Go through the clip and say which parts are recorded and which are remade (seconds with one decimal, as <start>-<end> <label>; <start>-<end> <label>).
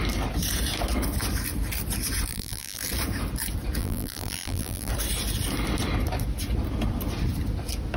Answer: 0.0-2.3 recorded; 2.3-2.8 remade; 2.8-3.8 recorded; 3.8-4.9 remade; 4.9-8.0 recorded